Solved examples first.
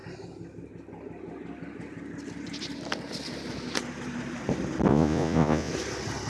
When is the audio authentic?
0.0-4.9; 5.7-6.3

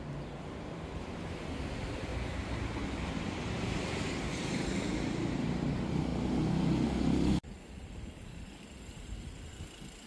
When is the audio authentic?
2.1-3.2; 6.1-7.0